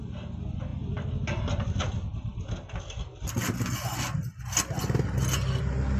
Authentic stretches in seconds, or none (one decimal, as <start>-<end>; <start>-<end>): 0.0-6.0